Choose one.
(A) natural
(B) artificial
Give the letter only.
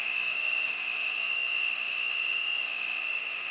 B